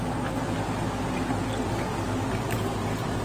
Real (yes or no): yes